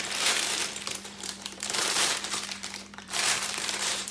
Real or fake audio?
fake